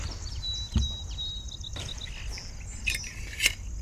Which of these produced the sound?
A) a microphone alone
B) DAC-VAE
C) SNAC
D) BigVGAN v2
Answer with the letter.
A